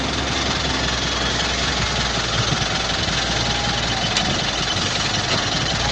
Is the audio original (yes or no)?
yes